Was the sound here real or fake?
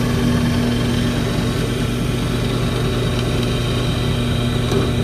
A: real